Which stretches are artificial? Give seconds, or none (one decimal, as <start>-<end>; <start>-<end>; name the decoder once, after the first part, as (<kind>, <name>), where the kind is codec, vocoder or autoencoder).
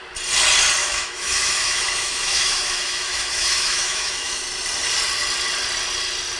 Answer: 0.8-4.4 (autoencoder, DAC-VAE)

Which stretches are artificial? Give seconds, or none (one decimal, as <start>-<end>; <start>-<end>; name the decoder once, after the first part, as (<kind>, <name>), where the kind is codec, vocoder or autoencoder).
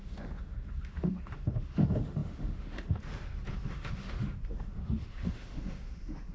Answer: 0.0-6.3 (autoencoder, DAC-VAE)